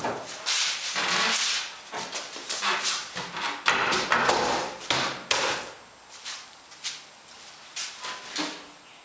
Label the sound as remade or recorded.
recorded